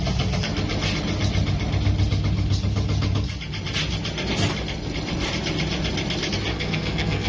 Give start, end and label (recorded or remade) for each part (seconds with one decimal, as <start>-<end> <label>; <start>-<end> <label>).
0.0-6.5 recorded; 6.5-7.3 remade